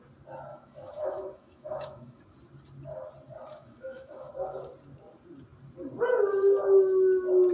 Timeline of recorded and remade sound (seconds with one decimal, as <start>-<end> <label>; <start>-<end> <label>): 0.0-0.5 recorded; 0.5-2.2 remade; 2.2-3.6 recorded; 3.6-4.3 remade; 4.3-7.5 recorded